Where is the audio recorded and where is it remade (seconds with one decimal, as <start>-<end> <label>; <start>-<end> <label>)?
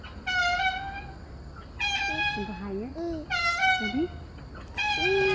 0.0-5.3 recorded